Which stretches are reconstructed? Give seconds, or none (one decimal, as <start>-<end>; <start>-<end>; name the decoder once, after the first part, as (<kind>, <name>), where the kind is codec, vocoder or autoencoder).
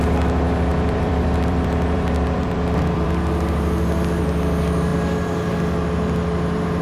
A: 0.7-4.2 (vocoder, BigVGAN v2)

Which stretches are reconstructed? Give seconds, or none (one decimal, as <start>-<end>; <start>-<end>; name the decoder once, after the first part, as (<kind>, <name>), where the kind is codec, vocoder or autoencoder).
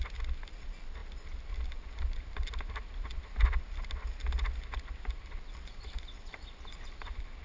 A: none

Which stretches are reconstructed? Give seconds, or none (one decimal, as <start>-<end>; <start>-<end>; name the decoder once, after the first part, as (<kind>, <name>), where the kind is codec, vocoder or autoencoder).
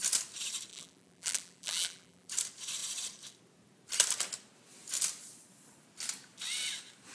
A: 0.7-2.3 (vocoder, BigVGAN v2)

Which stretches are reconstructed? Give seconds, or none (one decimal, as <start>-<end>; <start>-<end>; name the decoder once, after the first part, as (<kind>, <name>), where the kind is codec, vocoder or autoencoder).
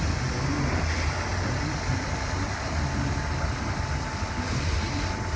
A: none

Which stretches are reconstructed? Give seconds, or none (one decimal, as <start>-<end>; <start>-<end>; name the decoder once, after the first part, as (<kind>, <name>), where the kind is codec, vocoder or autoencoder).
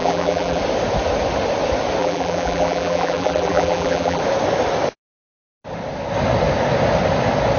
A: 0.0-0.6 (vocoder, BigVGAN v2); 2.0-4.2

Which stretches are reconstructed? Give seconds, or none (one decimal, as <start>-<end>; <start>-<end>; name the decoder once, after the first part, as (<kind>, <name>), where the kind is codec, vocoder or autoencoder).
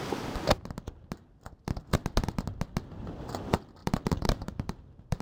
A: 3.8-5.2 (vocoder, BigVGAN v2)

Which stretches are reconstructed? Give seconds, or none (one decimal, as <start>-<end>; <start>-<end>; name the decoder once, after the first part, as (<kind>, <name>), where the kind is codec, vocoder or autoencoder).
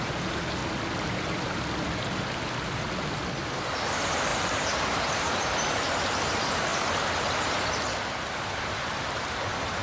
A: 0.0-0.6 (vocoder, BigVGAN v2); 3.5-6.7; 8.1-9.8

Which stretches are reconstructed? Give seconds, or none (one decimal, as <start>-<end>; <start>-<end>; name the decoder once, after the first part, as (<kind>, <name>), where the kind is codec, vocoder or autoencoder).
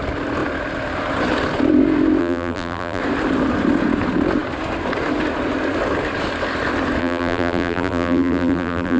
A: 2.2-3.0 (vocoder, BigVGAN v2); 7.0-9.0